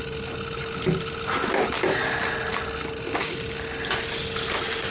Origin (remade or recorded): recorded